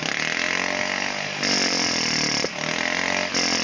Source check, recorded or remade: recorded